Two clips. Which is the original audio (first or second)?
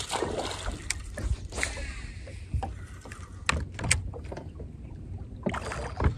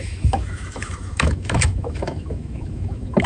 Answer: first